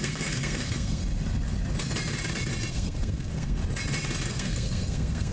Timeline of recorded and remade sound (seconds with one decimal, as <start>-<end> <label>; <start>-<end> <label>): 0.0-1.0 remade; 1.0-2.7 recorded; 2.7-3.6 remade; 3.6-4.3 recorded; 4.3-5.3 remade